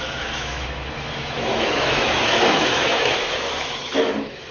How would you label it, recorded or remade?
remade